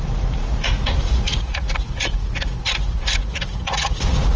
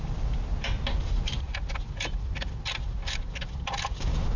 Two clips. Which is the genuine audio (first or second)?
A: second